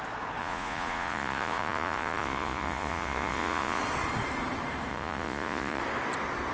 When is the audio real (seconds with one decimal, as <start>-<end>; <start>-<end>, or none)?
0.0-0.4; 3.8-4.9; 5.8-6.5